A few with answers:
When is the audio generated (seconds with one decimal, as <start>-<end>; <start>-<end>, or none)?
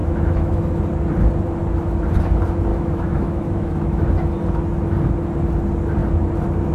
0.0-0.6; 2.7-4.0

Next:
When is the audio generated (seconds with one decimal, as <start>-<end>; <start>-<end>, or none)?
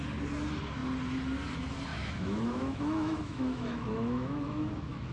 1.9-5.1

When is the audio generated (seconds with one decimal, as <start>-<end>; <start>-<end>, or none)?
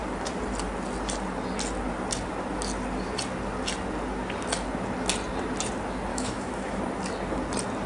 6.1-6.8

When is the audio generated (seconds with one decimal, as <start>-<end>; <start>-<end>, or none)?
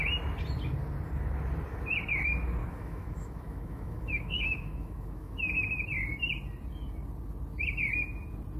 2.6-5.3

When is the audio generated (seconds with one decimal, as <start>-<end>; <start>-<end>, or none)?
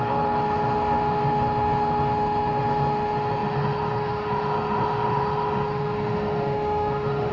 0.0-7.3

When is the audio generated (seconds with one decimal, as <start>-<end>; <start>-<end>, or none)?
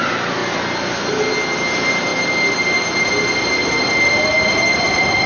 none